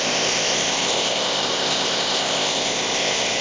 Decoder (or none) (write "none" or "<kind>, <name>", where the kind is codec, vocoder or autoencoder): codec, ZipCodec